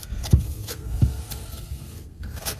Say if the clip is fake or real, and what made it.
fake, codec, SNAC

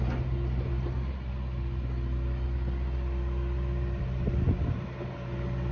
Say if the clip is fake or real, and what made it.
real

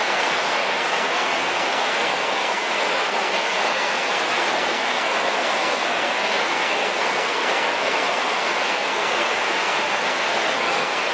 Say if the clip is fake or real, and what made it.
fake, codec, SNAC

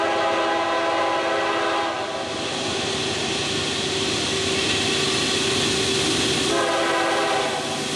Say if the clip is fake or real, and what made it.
real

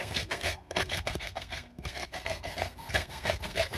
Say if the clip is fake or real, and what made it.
fake, codec, SNAC